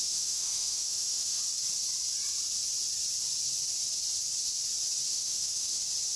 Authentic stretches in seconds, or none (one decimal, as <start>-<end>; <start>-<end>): 1.4-5.1; 5.8-6.2